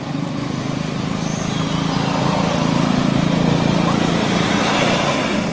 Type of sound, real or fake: real